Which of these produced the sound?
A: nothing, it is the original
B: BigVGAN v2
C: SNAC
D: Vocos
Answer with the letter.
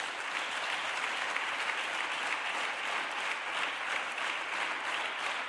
A